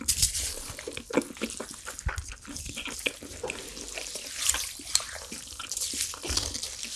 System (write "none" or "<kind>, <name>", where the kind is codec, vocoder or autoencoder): none